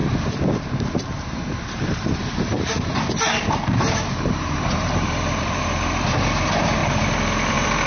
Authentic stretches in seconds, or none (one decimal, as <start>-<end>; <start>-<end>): 0.0-0.7; 2.2-3.4; 6.8-7.5